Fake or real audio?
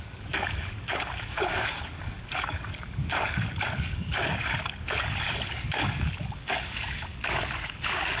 fake